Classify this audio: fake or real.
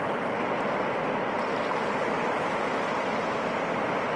real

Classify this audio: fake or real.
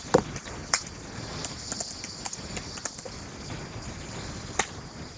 real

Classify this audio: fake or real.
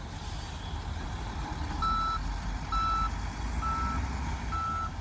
real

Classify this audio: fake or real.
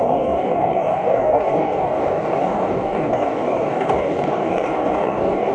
fake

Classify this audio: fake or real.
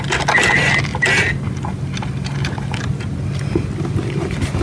real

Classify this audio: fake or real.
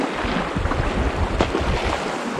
real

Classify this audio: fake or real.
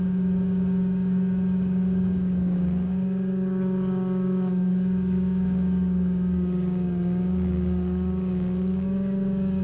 fake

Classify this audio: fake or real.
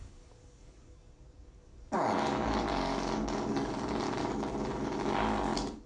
fake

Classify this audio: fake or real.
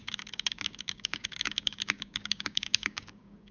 fake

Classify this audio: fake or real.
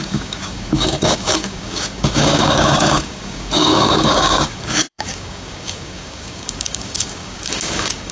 fake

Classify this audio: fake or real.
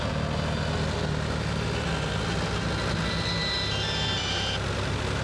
real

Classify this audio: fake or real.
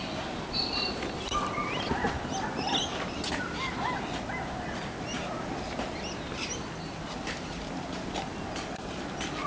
real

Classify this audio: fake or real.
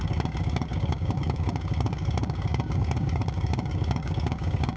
fake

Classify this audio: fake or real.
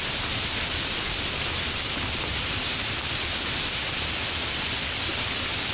real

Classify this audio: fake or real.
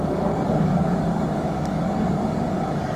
fake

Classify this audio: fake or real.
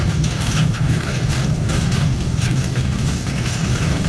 fake